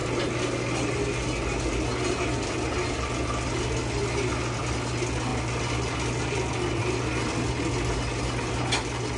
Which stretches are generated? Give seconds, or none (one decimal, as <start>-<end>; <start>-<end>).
none

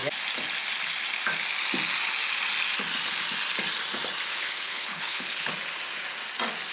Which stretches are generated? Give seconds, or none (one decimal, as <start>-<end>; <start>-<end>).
4.3-5.5